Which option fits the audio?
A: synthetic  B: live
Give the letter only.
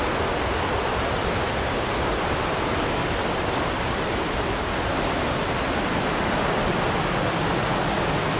B